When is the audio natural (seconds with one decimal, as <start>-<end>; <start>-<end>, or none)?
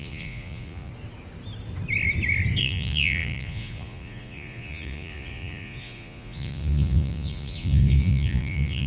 0.9-2.6